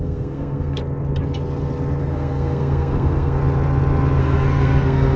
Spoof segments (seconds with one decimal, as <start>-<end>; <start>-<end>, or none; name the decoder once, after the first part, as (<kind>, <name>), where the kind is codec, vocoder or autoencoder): 0.0-0.8 (codec, SNAC); 2.0-3.4; 4.2-5.2